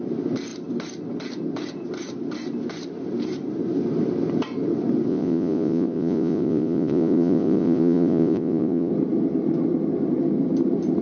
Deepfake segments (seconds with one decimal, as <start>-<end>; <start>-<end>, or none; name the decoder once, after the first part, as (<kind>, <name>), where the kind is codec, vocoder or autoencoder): 5.1-8.9 (vocoder, Vocos)